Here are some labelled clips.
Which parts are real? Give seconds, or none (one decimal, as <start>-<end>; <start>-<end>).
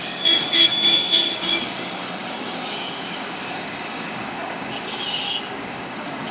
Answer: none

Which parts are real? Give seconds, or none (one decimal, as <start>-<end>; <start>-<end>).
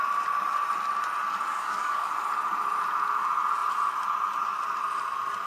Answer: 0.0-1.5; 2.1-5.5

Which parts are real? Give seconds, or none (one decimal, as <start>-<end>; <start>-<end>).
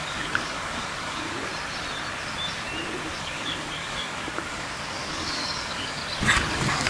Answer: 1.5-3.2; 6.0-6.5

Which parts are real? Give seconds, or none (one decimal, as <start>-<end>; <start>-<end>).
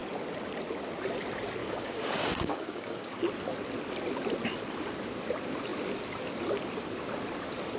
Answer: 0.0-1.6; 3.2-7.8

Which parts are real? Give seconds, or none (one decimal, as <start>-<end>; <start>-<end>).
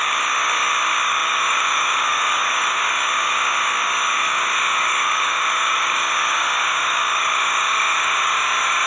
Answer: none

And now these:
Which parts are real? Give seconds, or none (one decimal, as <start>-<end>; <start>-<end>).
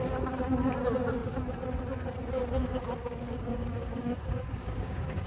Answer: 0.0-2.7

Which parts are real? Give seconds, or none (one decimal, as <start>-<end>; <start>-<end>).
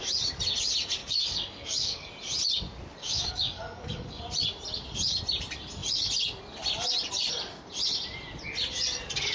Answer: 0.0-1.0; 2.1-3.0; 4.2-9.3